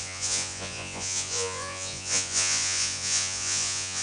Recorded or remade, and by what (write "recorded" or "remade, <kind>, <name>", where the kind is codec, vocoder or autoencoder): remade, vocoder, Vocos